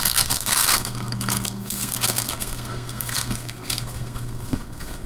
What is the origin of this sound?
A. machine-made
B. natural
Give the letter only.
A